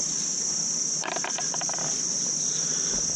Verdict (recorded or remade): recorded